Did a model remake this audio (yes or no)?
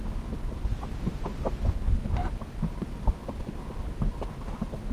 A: no